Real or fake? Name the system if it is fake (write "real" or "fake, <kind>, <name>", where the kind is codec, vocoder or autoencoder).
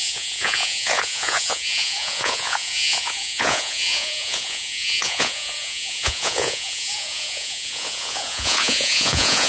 fake, vocoder, Vocos